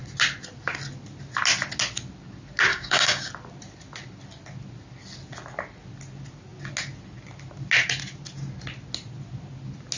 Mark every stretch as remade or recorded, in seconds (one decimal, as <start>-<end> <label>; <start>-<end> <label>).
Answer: 0.0-2.7 recorded; 2.7-3.3 remade; 3.3-10.0 recorded